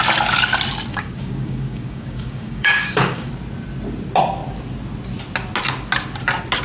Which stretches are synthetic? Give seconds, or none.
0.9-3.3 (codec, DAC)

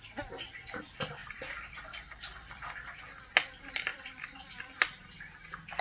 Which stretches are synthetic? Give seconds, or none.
1.2-2.7 (vocoder, BigVGAN v2); 3.9-4.5